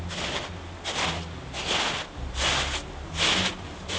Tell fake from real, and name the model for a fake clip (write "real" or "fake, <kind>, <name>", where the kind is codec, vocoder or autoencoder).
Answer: real